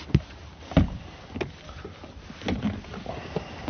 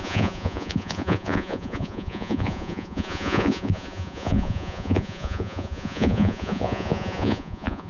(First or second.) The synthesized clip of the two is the second